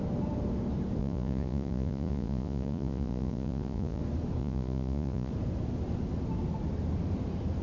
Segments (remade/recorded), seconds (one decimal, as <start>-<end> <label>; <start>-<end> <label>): 0.0-1.0 recorded; 1.0-4.0 remade; 4.0-4.4 recorded; 4.4-5.3 remade; 5.3-7.6 recorded